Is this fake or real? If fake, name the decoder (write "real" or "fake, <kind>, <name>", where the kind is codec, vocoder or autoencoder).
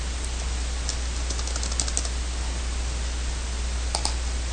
real